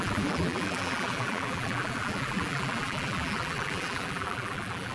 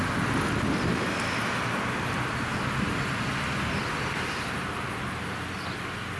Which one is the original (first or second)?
second